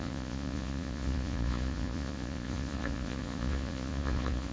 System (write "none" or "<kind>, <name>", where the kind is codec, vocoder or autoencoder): vocoder, Vocos